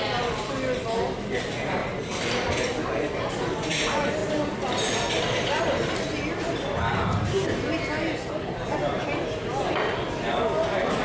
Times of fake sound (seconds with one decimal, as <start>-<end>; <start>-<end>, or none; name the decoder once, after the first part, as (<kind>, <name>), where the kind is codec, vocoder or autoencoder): none

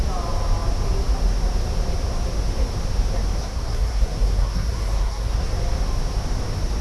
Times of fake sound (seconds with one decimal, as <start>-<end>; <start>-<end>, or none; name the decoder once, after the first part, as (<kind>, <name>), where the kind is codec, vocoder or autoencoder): 3.4-5.5 (codec, SNAC)

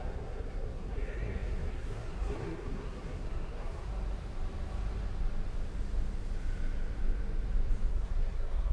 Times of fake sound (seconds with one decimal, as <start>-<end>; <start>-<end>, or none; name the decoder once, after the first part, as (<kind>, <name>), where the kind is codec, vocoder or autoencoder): 0.0-3.9 (codec, SNAC); 7.9-8.7

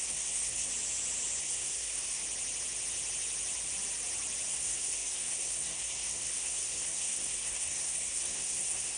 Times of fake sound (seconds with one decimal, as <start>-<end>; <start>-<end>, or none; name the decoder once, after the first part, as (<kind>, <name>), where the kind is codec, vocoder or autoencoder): 0.0-0.7 (codec, SNAC); 1.4-2.2; 4.5-9.0

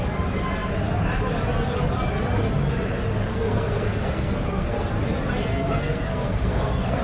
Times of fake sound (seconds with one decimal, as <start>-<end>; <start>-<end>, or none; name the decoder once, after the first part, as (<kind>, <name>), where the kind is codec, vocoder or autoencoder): 3.3-4.9 (codec, SNAC); 5.5-7.0

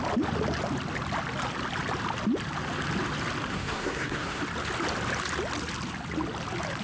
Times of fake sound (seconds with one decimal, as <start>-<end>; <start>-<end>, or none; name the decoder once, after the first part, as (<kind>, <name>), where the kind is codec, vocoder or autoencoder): 3.5-4.4 (codec, SNAC)

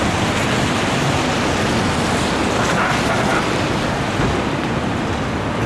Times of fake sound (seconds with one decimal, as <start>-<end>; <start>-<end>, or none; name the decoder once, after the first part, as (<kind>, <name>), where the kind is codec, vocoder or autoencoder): none